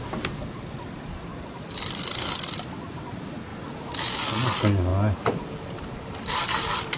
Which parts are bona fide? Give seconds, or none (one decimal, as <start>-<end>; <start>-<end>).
0.0-7.0